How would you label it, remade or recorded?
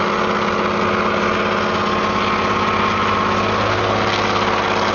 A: recorded